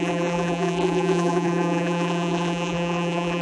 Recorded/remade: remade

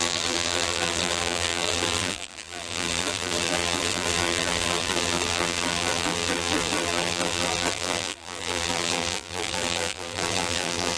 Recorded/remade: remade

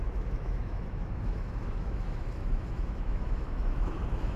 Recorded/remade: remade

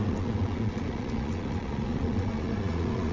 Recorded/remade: remade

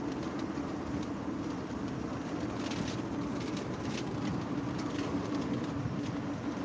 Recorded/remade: recorded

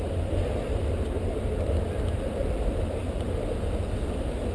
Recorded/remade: recorded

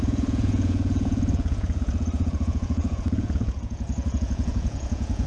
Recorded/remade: remade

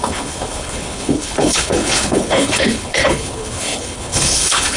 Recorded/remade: remade